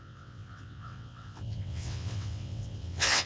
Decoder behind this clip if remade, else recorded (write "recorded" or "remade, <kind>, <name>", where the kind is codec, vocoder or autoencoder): remade, vocoder, WaveNeXt